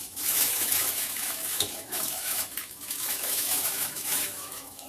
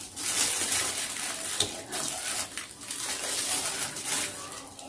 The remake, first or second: first